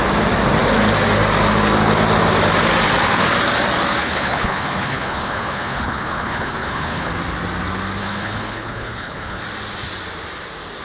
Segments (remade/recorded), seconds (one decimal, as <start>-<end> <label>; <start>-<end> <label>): 0.0-4.0 recorded; 4.0-7.1 remade; 7.1-8.0 recorded; 8.0-9.4 remade; 9.4-10.8 recorded